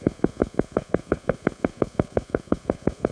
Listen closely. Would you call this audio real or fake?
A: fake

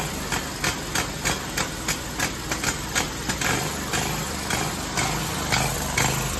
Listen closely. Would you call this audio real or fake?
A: real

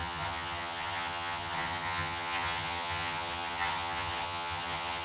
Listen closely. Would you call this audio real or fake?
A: fake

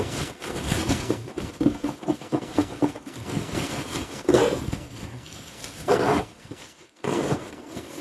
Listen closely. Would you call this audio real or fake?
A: fake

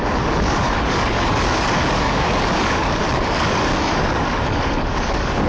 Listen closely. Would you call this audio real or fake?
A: fake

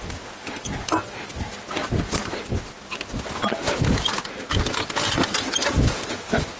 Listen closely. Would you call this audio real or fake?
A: real